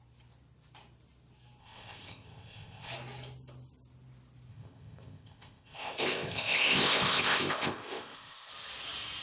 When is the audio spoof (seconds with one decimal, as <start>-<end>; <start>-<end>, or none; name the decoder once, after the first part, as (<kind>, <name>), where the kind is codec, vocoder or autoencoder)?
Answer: 1.6-2.9 (codec, ZipCodec); 4.5-8.5